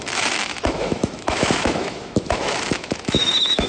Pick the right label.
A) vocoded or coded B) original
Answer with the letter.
A